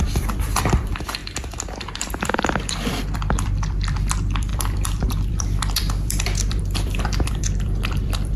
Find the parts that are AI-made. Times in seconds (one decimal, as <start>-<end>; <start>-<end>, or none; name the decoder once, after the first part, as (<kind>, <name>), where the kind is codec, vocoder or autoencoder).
0.0-1.2 (vocoder, BigVGAN v2); 2.0-8.4